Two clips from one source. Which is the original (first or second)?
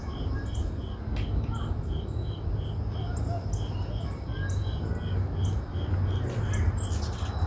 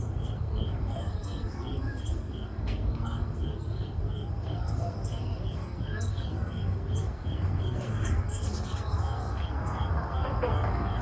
first